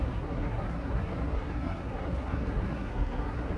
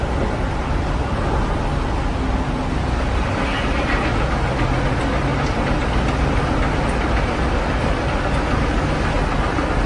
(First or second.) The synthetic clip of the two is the first